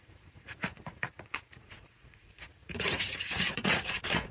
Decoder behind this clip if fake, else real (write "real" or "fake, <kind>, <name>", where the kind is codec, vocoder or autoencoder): fake, vocoder, Vocos